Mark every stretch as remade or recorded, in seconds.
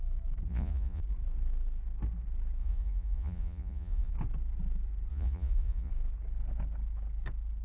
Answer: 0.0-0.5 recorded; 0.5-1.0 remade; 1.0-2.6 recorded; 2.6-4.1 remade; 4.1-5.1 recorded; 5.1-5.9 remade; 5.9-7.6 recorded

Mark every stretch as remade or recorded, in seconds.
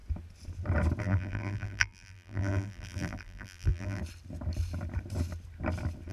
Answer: 0.0-1.0 recorded; 1.0-4.0 remade; 4.0-6.1 recorded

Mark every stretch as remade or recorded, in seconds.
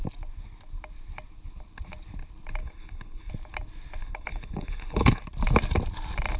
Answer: 0.0-2.6 recorded; 2.6-3.3 remade; 3.3-4.0 recorded; 4.0-5.2 remade; 5.2-6.4 recorded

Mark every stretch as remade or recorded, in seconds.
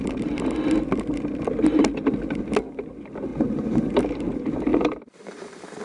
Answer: 0.0-3.3 recorded; 3.3-4.0 remade; 4.0-4.7 recorded; 4.7-5.8 remade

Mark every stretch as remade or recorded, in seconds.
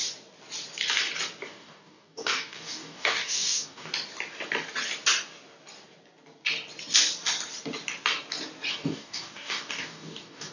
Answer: 0.0-1.5 recorded; 1.5-3.9 remade; 3.9-8.7 recorded; 8.7-10.5 remade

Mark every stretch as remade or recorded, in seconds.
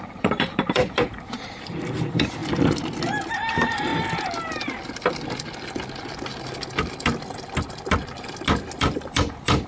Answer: 0.0-2.4 remade; 2.4-3.3 recorded; 3.3-3.9 remade; 3.9-8.8 recorded; 8.8-9.7 remade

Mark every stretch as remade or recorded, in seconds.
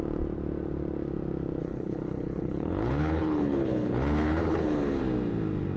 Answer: 0.0-1.6 recorded; 1.6-5.0 remade; 5.0-5.8 recorded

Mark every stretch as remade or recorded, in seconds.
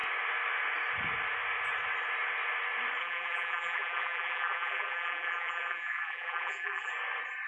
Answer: 0.0-3.0 recorded; 3.0-6.9 remade; 6.9-7.5 recorded